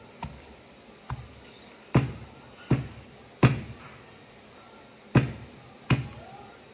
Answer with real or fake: real